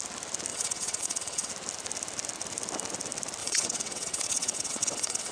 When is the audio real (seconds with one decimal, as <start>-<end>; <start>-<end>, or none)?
0.0-0.5; 1.5-3.4